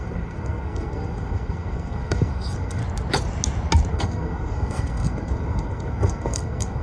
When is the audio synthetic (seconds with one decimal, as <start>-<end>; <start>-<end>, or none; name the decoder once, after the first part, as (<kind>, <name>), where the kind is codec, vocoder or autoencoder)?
0.0-2.8 (codec, SNAC); 3.9-6.8